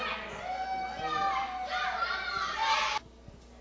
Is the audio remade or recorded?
recorded